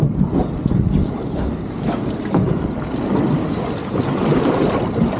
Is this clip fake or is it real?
real